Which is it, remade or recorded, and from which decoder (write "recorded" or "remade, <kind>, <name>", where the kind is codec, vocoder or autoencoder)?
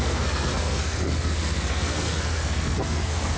remade, codec, SNAC